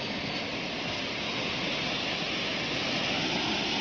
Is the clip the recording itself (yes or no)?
yes